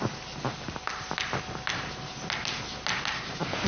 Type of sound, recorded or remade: recorded